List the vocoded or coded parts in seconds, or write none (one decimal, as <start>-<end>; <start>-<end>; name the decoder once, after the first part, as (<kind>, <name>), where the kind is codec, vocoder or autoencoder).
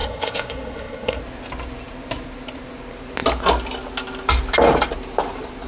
0.0-1.2 (codec, SNAC)